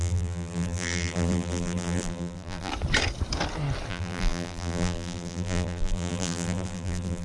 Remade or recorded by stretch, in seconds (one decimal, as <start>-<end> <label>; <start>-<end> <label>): 0.0-2.7 remade; 2.7-3.9 recorded; 3.9-7.2 remade